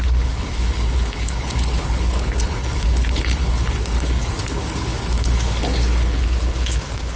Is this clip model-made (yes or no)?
yes